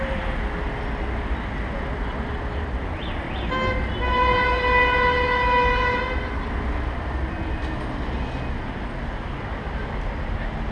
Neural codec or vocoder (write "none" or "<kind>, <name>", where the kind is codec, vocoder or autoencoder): none